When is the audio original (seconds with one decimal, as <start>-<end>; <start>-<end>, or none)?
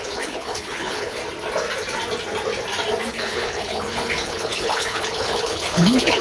1.2-3.1